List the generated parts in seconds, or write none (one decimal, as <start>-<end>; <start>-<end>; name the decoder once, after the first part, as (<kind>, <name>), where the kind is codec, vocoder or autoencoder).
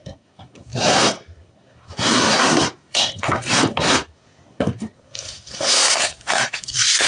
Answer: 0.0-7.1 (codec, SNAC)